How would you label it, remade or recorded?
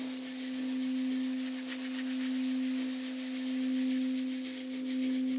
recorded